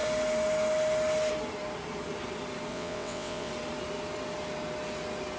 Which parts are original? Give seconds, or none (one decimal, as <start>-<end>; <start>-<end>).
0.0-2.7; 3.5-5.4